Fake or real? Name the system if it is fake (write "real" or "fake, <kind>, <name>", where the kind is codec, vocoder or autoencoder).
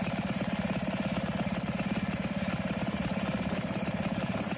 fake, vocoder, BigVGAN v2